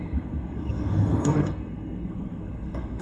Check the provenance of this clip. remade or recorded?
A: remade